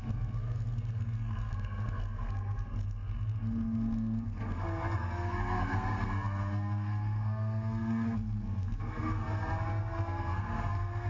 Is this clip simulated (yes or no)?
yes